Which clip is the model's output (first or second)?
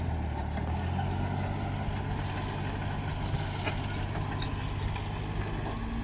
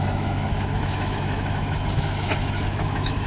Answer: second